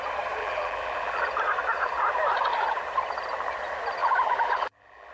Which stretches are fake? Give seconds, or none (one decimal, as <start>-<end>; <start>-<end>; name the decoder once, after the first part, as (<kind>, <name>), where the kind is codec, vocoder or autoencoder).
0.4-1.2 (vocoder, BigVGAN v2); 4.0-5.1